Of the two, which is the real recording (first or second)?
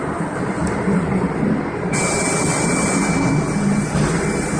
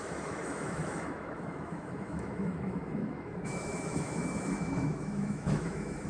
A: first